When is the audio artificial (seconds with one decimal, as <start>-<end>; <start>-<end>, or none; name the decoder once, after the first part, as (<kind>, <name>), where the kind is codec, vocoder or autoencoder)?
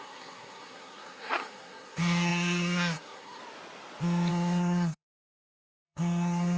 0.0-3.4 (codec, SNAC); 4.3-6.6